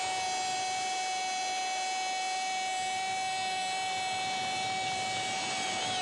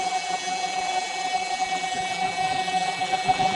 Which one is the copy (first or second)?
second